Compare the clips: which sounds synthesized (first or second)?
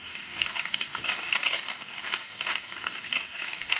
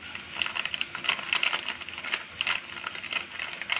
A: first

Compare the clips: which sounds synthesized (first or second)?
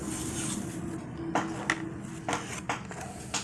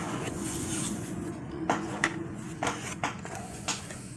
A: second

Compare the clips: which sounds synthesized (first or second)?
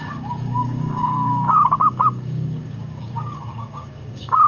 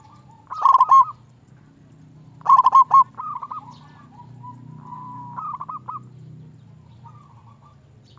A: first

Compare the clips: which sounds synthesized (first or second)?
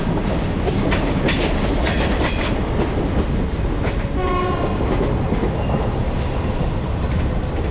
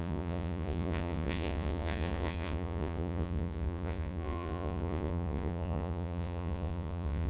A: second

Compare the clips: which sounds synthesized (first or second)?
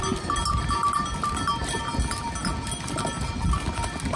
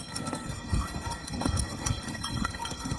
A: second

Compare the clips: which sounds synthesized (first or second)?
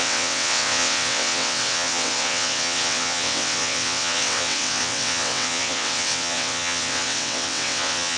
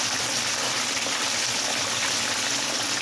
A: first